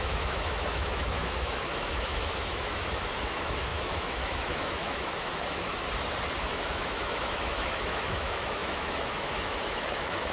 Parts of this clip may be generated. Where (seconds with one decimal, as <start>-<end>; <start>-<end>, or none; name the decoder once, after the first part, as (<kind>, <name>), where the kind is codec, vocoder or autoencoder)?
0.0-5.7 (autoencoder, DAC-VAE); 6.4-10.3